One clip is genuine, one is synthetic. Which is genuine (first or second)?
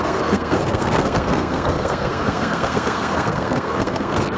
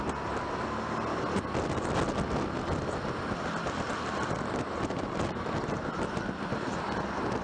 second